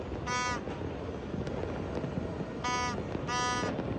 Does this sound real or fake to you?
real